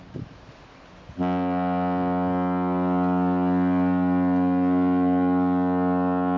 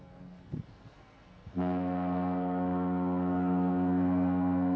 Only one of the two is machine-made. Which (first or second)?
second